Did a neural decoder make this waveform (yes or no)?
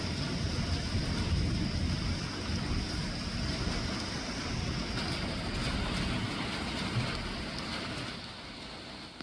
no